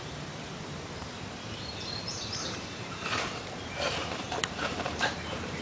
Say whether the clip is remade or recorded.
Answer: remade